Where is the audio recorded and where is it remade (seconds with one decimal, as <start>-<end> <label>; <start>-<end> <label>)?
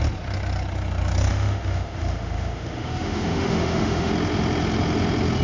0.0-1.3 recorded; 1.3-4.1 remade; 4.1-5.4 recorded